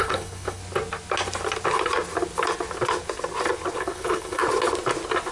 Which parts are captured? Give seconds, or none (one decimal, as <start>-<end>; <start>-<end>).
0.6-3.8; 4.4-5.3